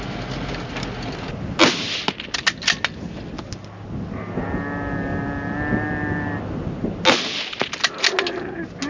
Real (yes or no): yes